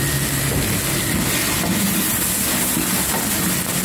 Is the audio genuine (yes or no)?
yes